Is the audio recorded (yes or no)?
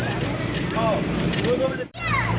no